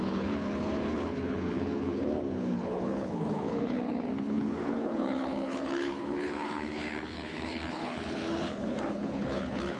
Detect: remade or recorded remade